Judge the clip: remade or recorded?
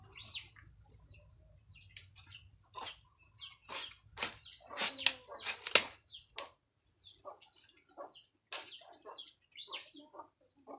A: recorded